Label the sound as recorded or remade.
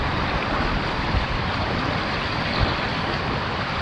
recorded